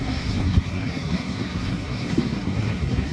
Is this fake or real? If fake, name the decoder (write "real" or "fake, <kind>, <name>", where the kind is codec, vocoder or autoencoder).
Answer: fake, codec, SNAC